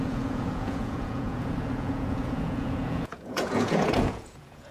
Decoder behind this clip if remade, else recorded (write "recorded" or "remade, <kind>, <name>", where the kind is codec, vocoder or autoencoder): remade, vocoder, Vocos